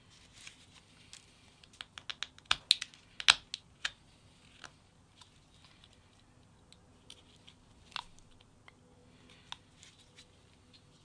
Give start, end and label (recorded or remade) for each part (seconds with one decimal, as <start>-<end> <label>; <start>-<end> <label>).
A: 0.0-11.0 recorded